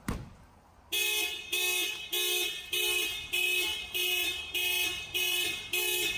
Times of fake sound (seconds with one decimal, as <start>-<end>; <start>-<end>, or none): 3.7-5.6